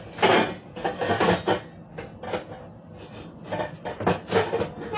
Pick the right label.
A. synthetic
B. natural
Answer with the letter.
B